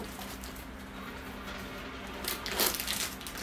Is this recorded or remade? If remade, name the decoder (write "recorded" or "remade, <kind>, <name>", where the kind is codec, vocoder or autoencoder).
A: recorded